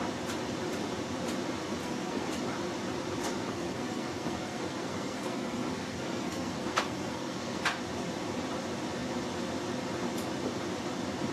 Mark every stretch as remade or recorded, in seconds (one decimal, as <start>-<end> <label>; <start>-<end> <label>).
0.0-1.8 recorded; 1.8-2.4 remade; 2.4-3.2 recorded; 3.2-7.6 remade; 7.6-11.3 recorded

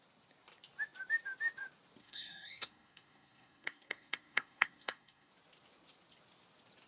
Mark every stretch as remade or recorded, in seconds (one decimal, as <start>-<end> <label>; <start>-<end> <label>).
0.0-2.0 recorded; 2.0-5.3 remade; 5.3-6.9 recorded

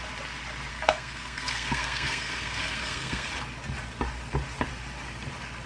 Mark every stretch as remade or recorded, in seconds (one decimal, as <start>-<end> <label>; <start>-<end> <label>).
0.0-0.7 recorded; 0.7-3.3 remade; 3.3-5.7 recorded

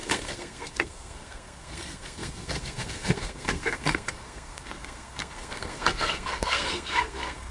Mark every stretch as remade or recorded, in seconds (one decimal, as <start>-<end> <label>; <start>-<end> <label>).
0.0-7.5 remade

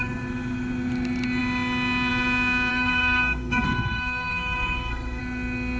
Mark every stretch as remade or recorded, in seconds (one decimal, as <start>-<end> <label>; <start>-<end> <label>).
0.0-2.7 recorded; 2.7-5.2 remade; 5.2-5.8 recorded